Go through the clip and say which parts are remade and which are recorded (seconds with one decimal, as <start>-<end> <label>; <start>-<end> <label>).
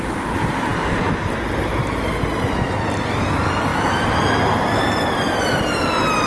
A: 0.0-6.3 recorded